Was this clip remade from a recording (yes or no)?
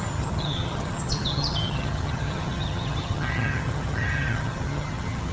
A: yes